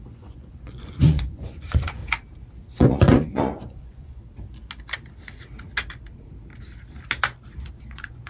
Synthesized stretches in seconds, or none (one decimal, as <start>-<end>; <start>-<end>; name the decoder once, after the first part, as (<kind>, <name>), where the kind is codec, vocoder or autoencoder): 0.0-2.0 (vocoder, Vocos); 2.7-4.2; 7.9-8.3